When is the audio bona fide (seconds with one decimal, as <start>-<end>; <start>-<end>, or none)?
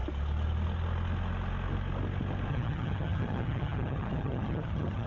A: 0.0-2.5